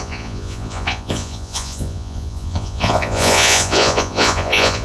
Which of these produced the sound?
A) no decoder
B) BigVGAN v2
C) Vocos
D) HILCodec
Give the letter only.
C